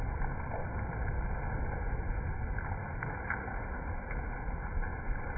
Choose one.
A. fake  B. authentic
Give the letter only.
B